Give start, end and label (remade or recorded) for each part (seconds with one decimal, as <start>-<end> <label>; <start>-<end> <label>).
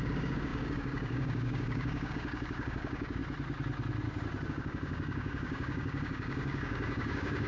0.0-3.2 remade; 3.2-4.5 recorded; 4.5-7.5 remade